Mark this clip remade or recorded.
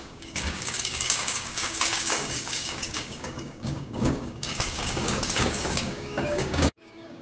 remade